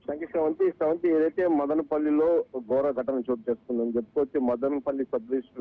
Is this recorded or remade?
recorded